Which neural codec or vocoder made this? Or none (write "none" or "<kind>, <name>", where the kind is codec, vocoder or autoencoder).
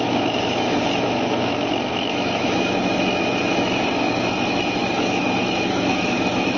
autoencoder, DAC-VAE